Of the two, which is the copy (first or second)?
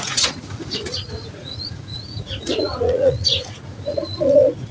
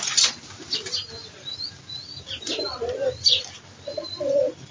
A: first